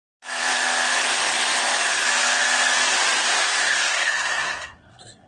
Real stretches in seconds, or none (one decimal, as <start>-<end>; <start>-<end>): 0.0-3.2